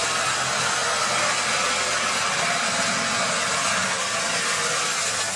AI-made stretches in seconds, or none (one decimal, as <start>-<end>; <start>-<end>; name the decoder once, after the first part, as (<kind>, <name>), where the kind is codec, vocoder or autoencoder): none